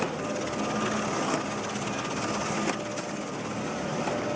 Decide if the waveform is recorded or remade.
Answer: recorded